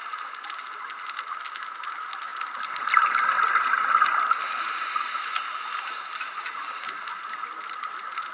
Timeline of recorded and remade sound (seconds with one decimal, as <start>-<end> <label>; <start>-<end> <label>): 0.0-8.3 recorded